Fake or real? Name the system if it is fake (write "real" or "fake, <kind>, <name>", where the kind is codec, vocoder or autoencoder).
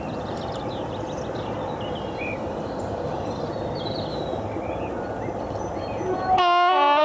real